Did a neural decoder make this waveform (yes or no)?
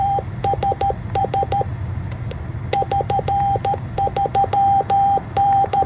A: yes